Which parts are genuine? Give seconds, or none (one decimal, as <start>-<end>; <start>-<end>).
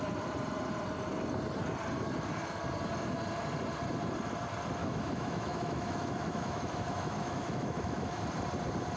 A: 0.0-4.8; 8.2-9.0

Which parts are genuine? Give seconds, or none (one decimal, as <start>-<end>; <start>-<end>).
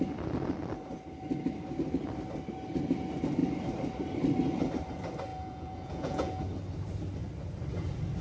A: 0.0-5.3; 6.4-8.2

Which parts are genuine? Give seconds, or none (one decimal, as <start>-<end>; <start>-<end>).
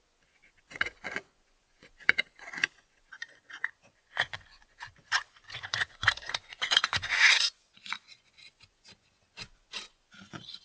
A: none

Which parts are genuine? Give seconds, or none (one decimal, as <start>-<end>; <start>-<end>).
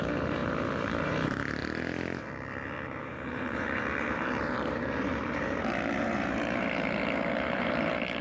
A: 1.6-3.0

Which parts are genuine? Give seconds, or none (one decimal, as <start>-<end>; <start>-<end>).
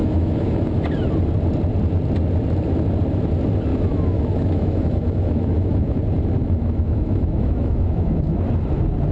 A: 0.8-3.7; 6.0-6.4; 8.4-9.1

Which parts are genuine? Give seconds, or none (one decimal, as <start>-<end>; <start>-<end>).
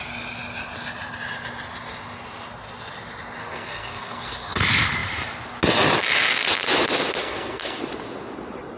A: 0.0-3.4; 4.6-7.2; 7.8-8.8